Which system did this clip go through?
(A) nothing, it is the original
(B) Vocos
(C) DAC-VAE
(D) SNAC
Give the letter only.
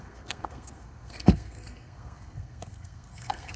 D